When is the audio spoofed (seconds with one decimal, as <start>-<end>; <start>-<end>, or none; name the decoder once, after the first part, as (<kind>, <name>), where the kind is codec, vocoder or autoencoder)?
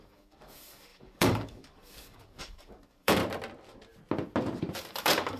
0.0-3.2 (codec, DAC); 4.9-5.4